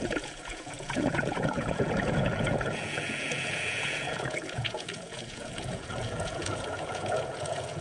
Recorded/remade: remade